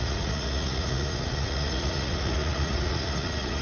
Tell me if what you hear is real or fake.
fake